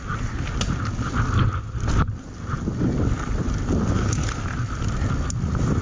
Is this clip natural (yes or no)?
yes